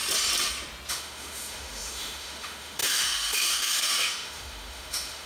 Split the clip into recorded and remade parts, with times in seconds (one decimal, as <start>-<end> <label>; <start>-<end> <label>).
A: 0.0-0.9 recorded; 0.9-5.3 remade